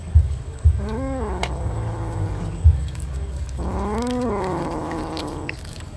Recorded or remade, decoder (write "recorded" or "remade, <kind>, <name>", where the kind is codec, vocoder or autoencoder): remade, codec, DAC